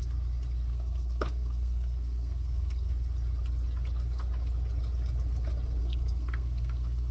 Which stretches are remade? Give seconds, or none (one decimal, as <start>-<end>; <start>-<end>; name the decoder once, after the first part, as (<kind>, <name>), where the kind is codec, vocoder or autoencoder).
0.7-2.9 (codec, SNAC); 5.8-7.1